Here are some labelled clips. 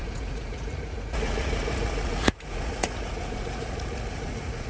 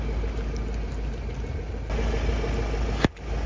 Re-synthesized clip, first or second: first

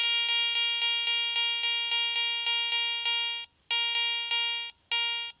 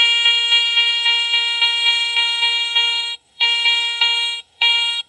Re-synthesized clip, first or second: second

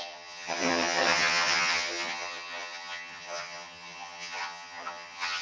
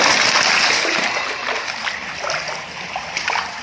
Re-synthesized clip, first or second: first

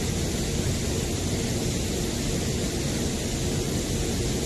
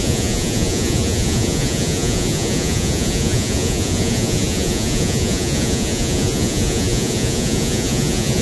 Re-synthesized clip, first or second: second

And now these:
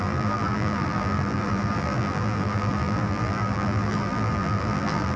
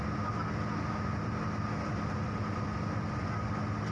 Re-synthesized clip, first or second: first